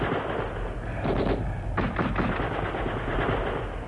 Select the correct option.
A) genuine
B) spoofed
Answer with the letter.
A